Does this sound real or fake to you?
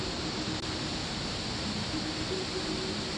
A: real